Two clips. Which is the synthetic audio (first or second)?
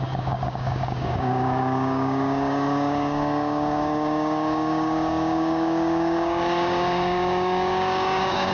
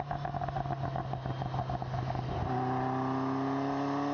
first